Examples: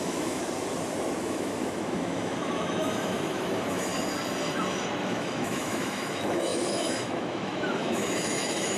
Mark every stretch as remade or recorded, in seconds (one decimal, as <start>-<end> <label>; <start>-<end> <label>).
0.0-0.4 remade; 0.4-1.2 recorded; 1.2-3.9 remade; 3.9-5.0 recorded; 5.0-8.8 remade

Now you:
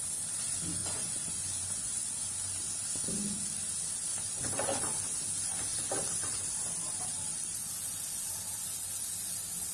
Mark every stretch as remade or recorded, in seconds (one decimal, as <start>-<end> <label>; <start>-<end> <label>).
0.0-0.8 recorded; 0.8-2.0 remade; 2.0-9.7 recorded

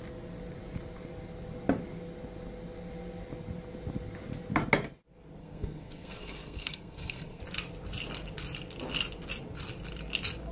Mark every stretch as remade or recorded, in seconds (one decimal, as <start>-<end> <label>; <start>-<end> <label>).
0.0-5.4 recorded; 5.4-7.4 remade; 7.4-10.5 recorded

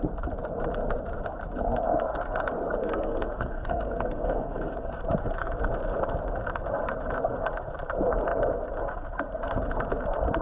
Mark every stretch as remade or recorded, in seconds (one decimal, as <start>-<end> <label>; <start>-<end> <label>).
0.0-2.8 recorded; 2.8-5.0 remade; 5.0-10.4 recorded

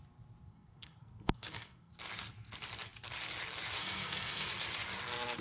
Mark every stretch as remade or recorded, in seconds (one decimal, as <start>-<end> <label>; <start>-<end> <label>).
0.0-0.5 recorded; 0.5-1.9 remade; 1.9-3.8 recorded; 3.8-4.5 remade; 4.5-5.4 recorded